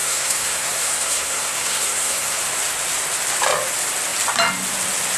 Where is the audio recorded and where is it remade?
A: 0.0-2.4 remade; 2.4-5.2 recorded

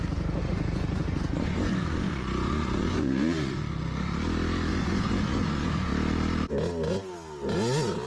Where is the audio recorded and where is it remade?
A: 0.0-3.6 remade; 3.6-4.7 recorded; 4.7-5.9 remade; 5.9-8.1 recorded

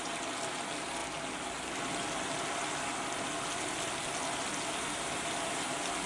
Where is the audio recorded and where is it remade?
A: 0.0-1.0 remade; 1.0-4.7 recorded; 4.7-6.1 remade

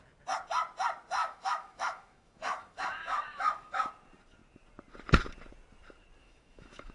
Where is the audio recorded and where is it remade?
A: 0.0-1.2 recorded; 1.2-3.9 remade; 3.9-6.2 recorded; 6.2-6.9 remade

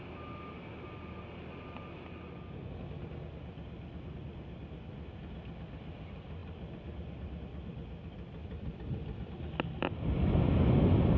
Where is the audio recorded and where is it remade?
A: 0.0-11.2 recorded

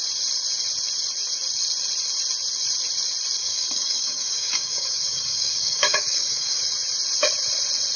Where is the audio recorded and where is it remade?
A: 0.0-3.4 recorded; 3.4-6.6 remade; 6.6-8.0 recorded

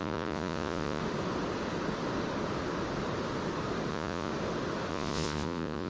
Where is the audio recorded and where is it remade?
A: 0.0-1.0 remade; 1.0-3.9 recorded; 3.9-4.3 remade; 4.3-4.9 recorded; 4.9-5.9 remade